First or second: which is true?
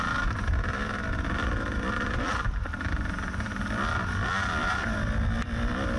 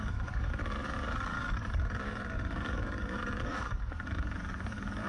first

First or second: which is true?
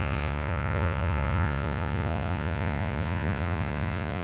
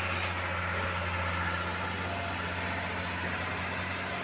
second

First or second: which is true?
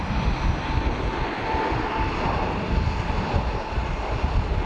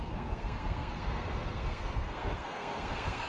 first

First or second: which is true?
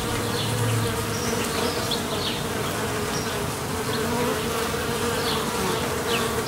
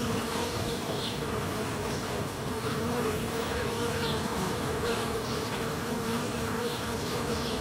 first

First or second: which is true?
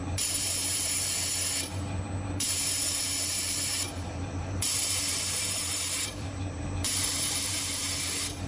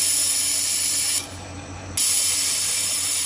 second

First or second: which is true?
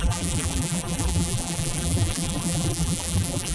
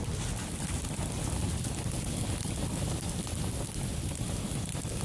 second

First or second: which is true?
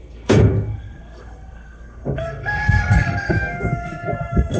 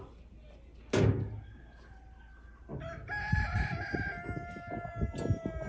second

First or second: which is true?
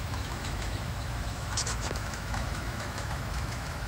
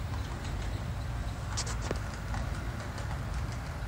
second